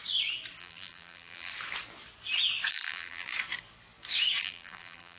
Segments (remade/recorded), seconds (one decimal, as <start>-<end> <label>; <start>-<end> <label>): 0.0-0.6 recorded; 0.6-1.5 remade; 1.5-2.7 recorded; 2.7-3.3 remade; 3.3-4.4 recorded; 4.4-5.2 remade